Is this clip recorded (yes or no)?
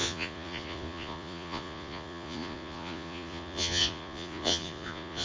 no